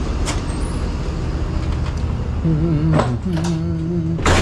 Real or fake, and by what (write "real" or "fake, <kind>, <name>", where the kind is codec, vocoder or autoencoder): real